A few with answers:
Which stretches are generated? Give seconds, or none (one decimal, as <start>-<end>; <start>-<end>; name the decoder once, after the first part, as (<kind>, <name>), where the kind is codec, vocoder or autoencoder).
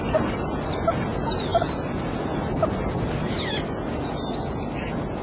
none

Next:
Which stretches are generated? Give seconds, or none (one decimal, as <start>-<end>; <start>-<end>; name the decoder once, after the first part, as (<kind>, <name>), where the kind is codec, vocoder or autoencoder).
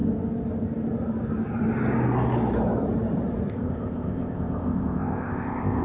3.5-5.8 (codec, ZipCodec)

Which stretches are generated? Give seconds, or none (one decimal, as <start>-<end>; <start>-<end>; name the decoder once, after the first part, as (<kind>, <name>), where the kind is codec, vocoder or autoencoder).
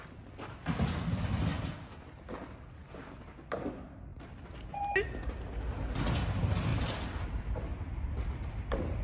none